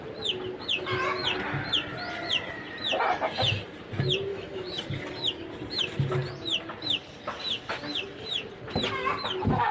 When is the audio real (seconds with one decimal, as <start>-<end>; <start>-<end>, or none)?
0.0-4.3; 4.8-9.7